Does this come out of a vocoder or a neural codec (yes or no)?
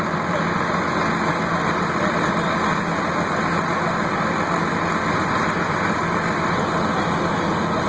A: no